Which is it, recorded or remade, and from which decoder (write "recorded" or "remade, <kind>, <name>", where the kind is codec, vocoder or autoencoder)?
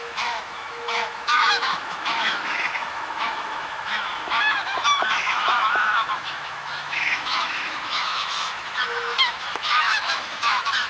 remade, autoencoder, DAC-VAE